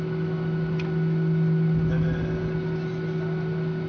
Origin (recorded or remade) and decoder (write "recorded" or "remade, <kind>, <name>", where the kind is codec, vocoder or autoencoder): recorded